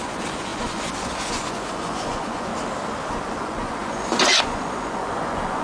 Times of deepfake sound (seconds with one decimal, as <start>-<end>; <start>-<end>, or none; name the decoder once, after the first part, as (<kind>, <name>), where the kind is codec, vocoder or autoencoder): 0.0-2.5 (vocoder, Vocos); 3.4-5.6